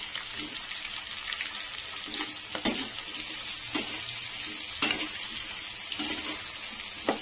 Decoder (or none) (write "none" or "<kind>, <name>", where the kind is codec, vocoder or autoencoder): none